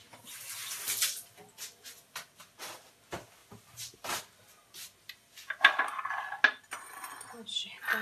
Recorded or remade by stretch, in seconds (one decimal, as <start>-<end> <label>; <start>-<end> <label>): 0.0-3.4 recorded; 3.4-4.2 remade; 4.2-8.0 recorded